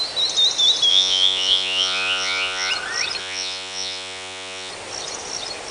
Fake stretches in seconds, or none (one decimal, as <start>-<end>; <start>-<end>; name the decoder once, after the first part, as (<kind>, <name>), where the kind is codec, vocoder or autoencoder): 0.9-2.7 (vocoder, Vocos); 3.2-4.7